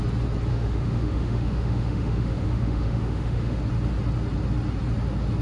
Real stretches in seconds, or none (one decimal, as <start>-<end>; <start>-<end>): 0.0-0.5; 3.6-5.4